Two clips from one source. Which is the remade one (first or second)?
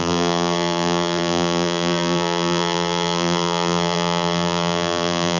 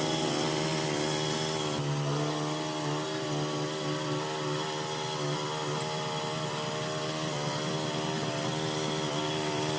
first